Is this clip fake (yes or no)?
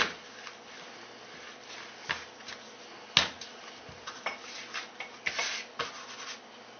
no